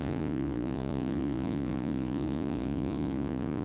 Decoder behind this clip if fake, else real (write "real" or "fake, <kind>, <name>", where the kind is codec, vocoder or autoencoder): fake, vocoder, Vocos